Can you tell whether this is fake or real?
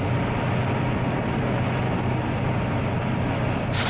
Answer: real